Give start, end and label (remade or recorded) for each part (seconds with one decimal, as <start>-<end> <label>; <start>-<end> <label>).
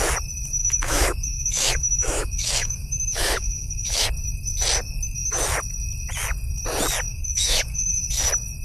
0.0-0.6 recorded; 0.6-4.1 remade; 4.1-7.1 recorded; 7.1-8.0 remade; 8.0-8.6 recorded